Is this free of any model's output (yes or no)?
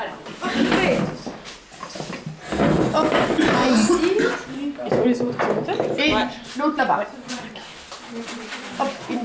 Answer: yes